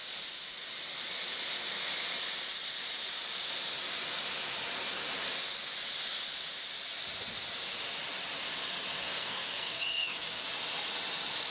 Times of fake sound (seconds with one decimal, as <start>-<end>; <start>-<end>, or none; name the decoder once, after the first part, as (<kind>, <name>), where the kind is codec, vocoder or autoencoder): 9.0-10.5 (codec, SNAC)